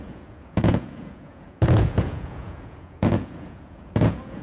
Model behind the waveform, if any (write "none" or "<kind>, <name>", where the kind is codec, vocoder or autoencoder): vocoder, Vocos